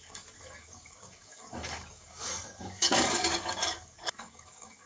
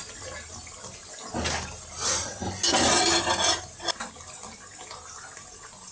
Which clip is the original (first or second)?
second